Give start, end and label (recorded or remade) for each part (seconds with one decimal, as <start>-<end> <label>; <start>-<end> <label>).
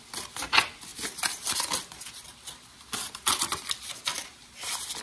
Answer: 0.0-5.0 recorded